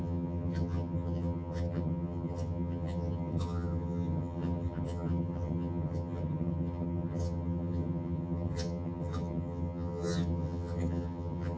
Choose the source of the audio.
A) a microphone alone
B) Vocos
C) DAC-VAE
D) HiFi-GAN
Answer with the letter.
D